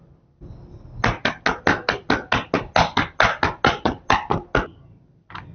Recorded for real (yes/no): yes